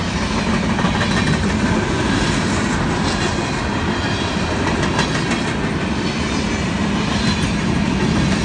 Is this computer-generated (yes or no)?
no